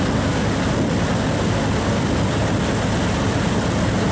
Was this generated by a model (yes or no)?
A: no